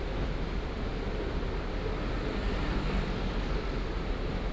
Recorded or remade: recorded